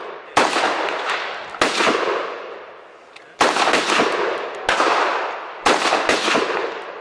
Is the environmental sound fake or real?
real